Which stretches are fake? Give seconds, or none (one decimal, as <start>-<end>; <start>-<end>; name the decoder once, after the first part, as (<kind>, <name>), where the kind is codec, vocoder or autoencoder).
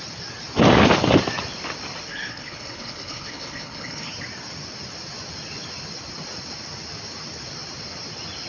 2.1-4.1 (codec, HILCodec)